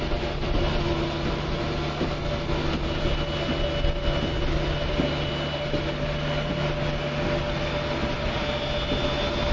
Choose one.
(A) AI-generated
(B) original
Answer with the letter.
B